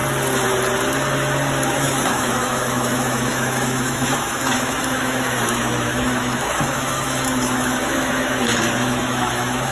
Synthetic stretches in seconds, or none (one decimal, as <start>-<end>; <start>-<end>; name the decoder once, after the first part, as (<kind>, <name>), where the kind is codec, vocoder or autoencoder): 1.7-9.7 (autoencoder, DAC-VAE)